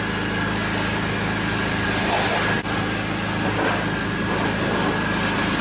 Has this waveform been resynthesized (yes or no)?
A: no